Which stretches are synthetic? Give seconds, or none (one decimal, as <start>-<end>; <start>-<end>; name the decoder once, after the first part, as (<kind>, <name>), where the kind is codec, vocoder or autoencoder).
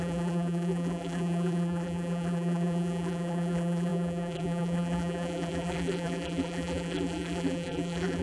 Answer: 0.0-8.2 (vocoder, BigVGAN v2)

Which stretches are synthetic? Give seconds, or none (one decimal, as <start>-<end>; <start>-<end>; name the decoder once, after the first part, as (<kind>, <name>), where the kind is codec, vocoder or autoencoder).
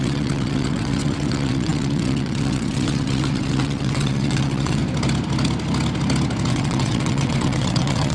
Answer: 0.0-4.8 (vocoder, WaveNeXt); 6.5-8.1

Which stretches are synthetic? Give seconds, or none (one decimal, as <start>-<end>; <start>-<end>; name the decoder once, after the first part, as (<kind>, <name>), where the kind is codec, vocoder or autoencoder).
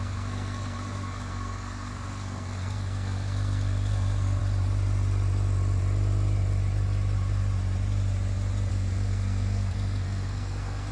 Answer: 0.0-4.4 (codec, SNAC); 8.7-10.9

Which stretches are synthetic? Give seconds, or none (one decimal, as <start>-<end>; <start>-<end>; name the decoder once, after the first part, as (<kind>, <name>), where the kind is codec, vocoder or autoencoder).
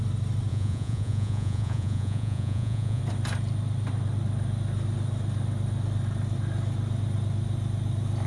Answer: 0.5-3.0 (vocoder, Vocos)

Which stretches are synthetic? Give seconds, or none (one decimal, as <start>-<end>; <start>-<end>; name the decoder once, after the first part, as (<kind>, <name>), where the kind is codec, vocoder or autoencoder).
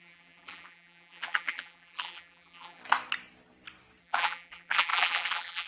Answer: 0.0-2.8 (vocoder, BigVGAN v2); 4.0-5.7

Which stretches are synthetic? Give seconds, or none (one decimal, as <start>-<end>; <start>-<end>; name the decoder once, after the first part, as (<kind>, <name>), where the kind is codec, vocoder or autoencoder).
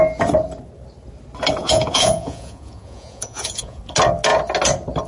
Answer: 1.6-3.8 (vocoder, Vocos)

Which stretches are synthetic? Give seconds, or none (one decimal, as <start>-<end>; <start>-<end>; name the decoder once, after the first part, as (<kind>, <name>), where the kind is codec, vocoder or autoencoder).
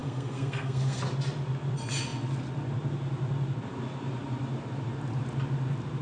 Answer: 0.0-1.0 (codec, SNAC)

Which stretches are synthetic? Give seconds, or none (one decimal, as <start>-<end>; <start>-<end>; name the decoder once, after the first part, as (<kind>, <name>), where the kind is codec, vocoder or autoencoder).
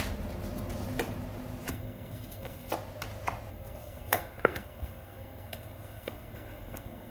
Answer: 1.7-2.7 (codec, SNAC); 3.5-7.1